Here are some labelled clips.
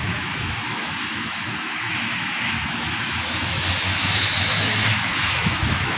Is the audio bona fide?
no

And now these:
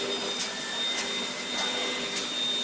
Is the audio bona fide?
yes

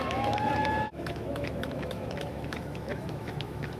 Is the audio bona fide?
no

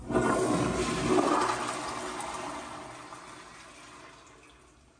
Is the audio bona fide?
yes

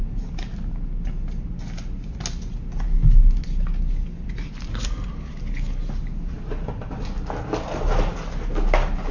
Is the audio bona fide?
yes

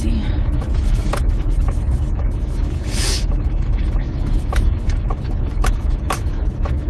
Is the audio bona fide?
no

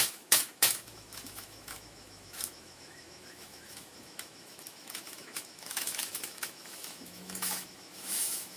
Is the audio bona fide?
no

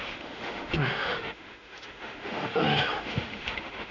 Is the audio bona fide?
no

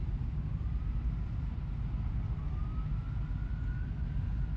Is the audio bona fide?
yes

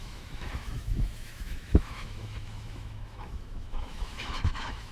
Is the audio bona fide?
no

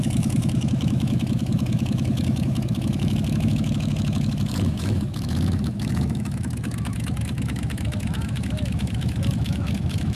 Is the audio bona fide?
no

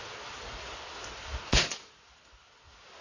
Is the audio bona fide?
yes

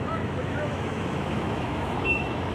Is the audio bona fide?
no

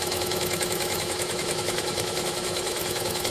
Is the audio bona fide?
no